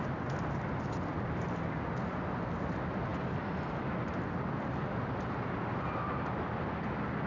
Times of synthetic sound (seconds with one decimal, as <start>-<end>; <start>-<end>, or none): 1.1-2.2